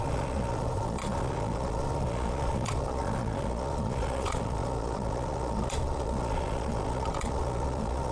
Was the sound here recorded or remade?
remade